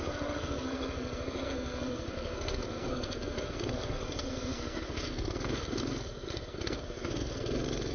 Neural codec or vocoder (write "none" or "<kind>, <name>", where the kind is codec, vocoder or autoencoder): codec, SNAC